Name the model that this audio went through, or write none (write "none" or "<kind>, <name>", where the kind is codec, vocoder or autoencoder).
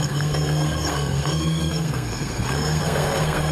codec, SNAC